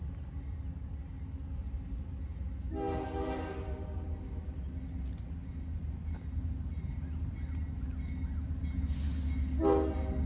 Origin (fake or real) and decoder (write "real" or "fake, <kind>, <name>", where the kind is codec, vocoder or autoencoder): real